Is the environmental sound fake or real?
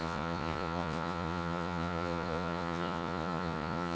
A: fake